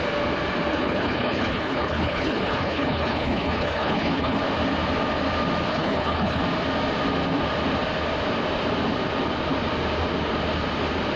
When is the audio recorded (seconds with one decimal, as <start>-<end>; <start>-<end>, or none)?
0.0-0.7; 4.4-5.7; 6.4-11.2